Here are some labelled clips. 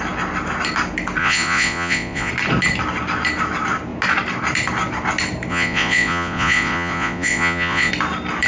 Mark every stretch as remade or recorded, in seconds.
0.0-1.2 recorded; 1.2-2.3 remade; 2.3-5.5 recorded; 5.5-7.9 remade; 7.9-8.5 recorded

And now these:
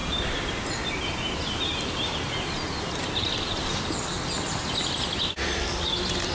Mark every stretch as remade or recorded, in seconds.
0.0-6.3 recorded

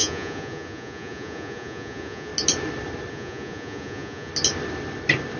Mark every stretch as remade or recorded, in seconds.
0.0-2.3 remade; 2.3-3.1 recorded; 3.1-4.3 remade; 4.3-5.4 recorded

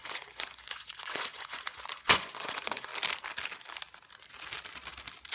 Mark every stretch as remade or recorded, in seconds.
0.0-2.9 remade; 2.9-5.3 recorded

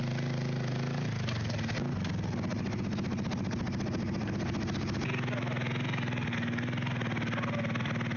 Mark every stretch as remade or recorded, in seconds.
0.0-8.2 recorded

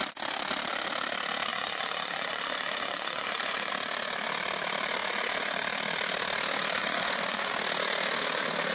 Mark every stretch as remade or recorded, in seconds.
0.0-1.5 recorded; 1.5-3.7 remade; 3.7-6.8 recorded; 6.8-7.5 remade; 7.5-8.7 recorded